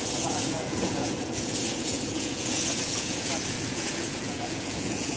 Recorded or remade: remade